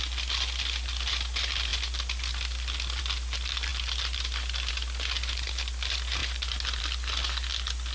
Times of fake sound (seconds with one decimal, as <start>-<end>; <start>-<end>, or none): none